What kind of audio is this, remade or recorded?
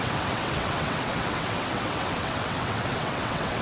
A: remade